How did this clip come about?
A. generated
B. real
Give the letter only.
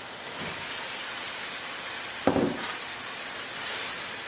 B